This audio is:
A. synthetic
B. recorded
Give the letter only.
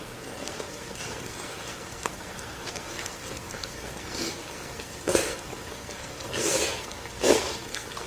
A